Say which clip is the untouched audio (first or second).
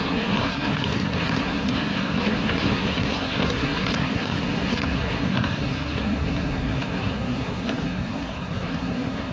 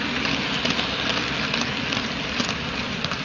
second